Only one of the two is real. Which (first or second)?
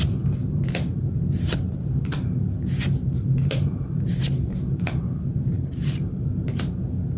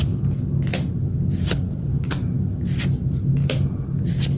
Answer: second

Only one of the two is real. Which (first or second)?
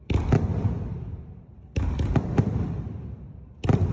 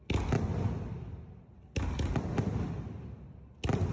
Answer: second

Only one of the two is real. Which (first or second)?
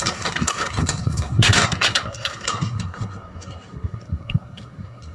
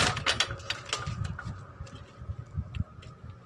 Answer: second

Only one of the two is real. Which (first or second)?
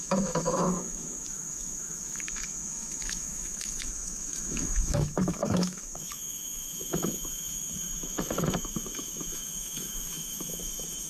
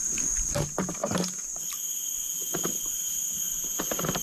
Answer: second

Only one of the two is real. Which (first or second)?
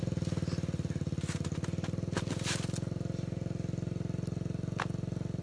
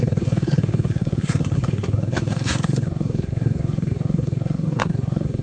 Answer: first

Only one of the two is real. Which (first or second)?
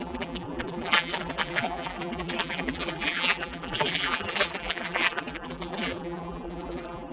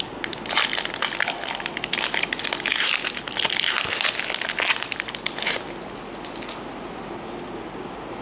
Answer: second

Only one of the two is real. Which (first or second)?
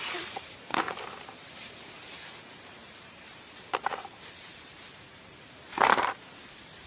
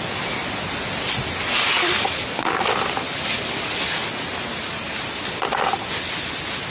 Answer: second